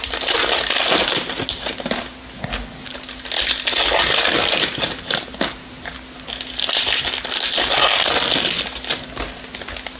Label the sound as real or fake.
real